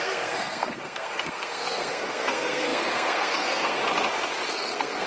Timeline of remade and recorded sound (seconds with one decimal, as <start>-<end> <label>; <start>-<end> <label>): 0.0-3.8 remade; 3.8-4.5 recorded; 4.5-5.1 remade